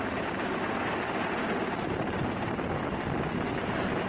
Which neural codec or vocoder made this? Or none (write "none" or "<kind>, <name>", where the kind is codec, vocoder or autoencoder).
none